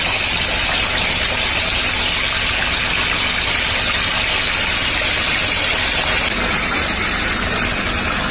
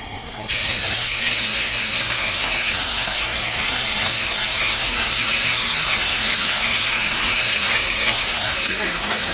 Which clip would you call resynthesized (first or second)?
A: second